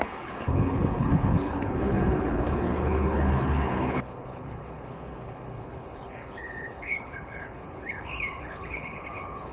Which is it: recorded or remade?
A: remade